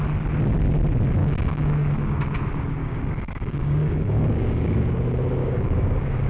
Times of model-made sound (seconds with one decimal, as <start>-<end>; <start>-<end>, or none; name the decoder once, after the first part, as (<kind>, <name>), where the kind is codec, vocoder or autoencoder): 1.2-2.2 (codec, DAC); 2.8-4.8; 5.4-6.3